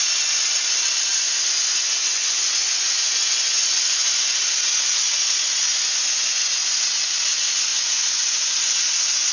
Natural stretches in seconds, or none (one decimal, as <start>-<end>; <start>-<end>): 0.0-1.1; 4.4-5.7; 6.8-7.7; 8.6-9.3